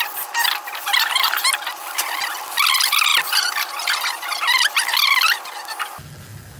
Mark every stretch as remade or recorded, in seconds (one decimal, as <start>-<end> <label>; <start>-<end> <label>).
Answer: 0.0-6.6 recorded